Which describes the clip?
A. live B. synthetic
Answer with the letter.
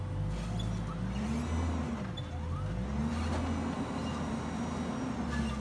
A